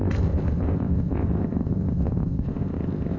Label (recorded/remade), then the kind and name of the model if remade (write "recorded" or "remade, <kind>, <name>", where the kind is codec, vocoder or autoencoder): remade, codec, ZipCodec